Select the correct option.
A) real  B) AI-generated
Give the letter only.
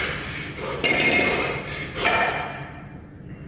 A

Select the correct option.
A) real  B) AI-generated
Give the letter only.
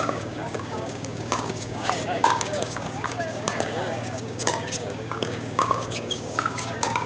B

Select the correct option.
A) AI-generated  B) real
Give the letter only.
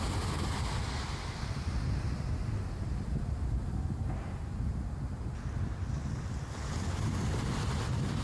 B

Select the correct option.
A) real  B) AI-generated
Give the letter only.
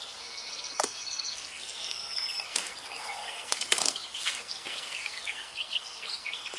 B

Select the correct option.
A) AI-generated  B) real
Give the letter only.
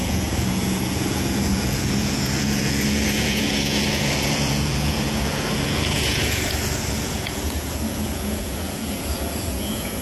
A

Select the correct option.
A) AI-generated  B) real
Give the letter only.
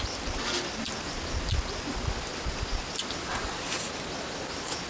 B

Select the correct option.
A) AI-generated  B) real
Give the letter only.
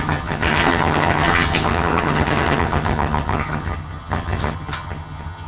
A